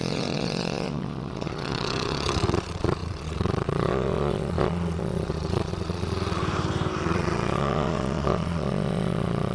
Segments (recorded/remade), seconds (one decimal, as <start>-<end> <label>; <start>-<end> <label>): 0.0-6.4 remade; 6.4-7.0 recorded; 7.0-9.5 remade